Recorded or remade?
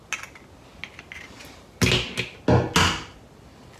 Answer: recorded